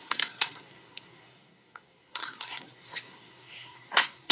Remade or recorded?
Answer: remade